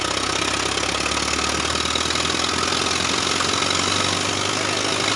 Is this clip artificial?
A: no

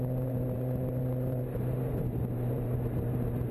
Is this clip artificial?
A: yes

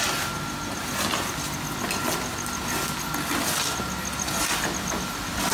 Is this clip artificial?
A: no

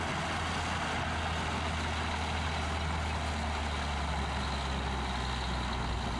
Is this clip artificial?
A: no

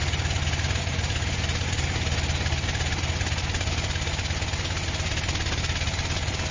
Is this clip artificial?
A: no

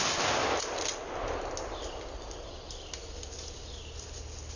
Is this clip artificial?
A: no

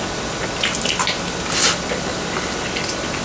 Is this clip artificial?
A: no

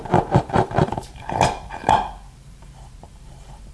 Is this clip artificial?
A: yes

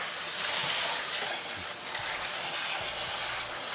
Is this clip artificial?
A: no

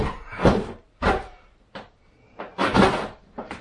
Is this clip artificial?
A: yes